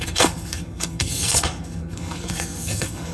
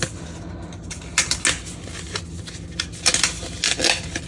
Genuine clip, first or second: second